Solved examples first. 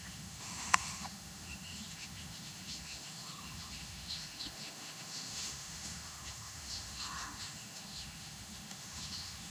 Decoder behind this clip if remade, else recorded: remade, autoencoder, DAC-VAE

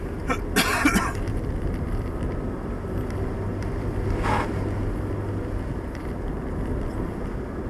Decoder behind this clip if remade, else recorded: recorded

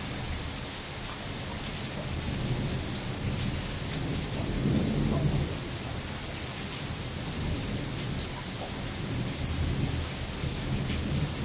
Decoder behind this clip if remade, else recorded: recorded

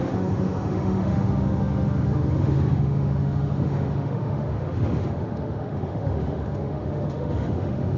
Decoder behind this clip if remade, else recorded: remade, autoencoder, DAC-VAE